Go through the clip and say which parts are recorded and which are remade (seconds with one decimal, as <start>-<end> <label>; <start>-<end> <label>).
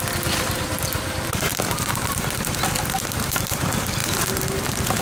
0.0-5.0 remade